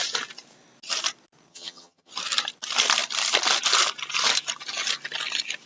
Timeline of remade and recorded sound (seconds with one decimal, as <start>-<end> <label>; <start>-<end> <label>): 0.0-1.5 recorded; 1.5-2.1 remade; 2.1-5.7 recorded